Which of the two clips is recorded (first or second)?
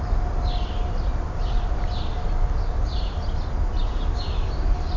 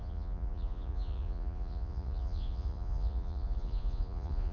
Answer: first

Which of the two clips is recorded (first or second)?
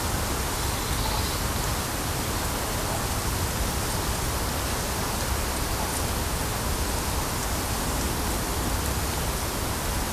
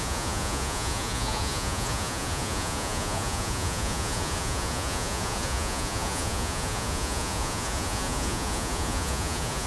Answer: first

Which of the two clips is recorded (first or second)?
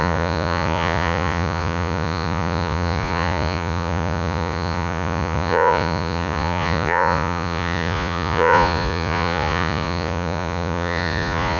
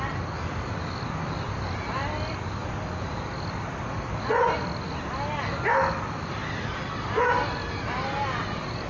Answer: second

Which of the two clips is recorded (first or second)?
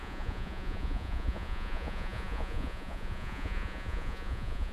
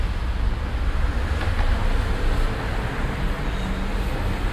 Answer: second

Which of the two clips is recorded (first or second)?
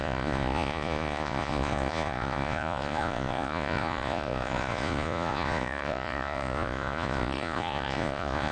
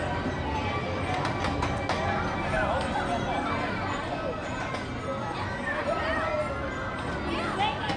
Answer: second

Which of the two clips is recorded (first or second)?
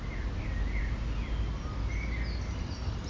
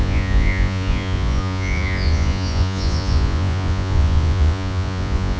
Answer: first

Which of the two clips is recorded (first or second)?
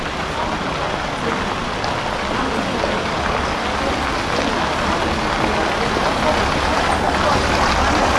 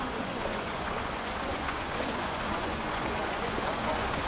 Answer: first